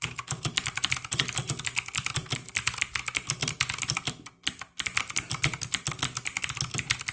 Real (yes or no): yes